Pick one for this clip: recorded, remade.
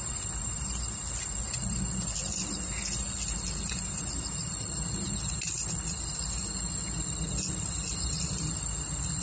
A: recorded